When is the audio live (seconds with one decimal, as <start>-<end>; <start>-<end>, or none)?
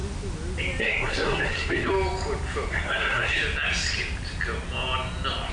0.0-0.8; 1.9-2.7; 3.4-5.5